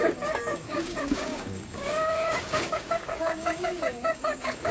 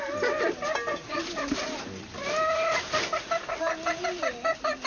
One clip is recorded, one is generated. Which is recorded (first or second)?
second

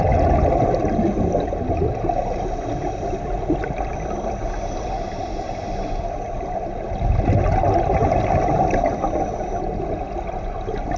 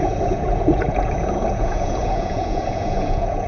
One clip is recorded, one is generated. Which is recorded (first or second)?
first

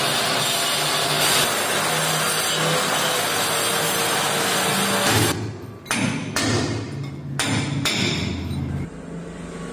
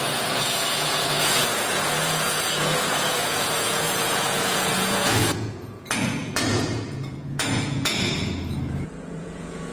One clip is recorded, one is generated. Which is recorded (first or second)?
first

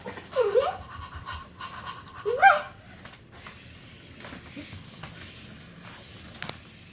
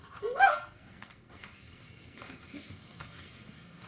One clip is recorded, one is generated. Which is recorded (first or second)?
first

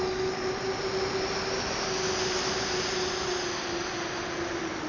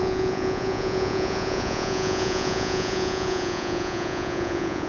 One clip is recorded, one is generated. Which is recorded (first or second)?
first